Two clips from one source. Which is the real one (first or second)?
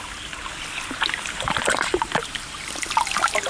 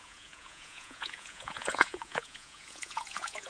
first